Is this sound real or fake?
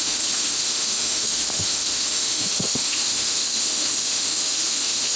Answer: fake